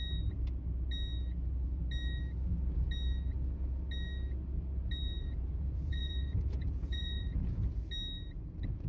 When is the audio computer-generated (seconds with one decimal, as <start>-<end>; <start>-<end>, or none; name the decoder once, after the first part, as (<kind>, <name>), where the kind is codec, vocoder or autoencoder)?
5.2-7.6 (vocoder, Vocos)